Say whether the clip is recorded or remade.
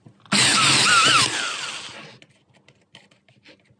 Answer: recorded